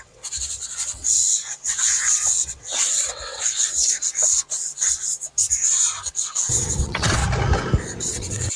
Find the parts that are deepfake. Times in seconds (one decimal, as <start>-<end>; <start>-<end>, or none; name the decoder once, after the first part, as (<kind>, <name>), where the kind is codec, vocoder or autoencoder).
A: 0.0-5.1 (vocoder, WaveNeXt); 6.1-7.2; 8.0-8.6